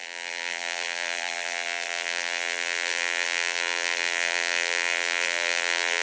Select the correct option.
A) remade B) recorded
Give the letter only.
A